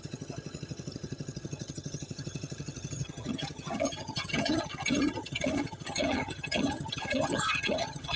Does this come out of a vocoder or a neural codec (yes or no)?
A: yes